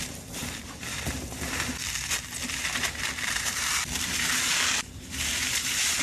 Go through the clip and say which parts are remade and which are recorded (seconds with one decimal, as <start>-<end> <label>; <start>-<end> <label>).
0.0-6.0 remade